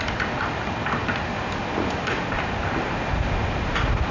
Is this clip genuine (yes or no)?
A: yes